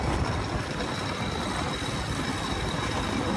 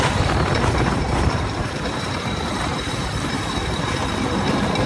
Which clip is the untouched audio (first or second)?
first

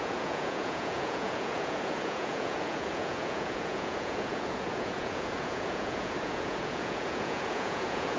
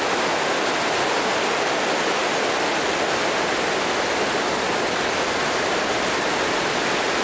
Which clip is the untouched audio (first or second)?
second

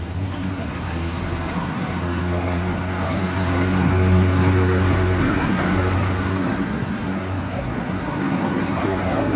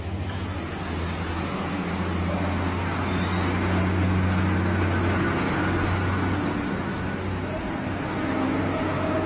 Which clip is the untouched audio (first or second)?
second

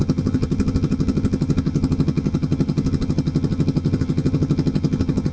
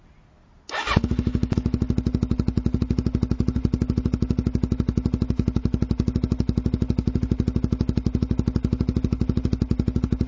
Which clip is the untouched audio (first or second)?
second